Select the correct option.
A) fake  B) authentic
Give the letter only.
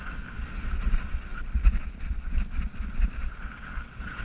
B